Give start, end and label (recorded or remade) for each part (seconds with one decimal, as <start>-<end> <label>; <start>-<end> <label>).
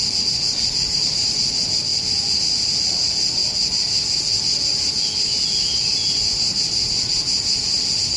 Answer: 0.0-3.4 remade; 3.4-6.9 recorded; 6.9-8.2 remade